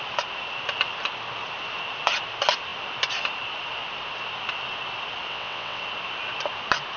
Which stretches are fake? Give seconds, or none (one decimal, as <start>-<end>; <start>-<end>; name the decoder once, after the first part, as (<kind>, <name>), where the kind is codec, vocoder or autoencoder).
5.3-5.8 (vocoder, WaveNeXt)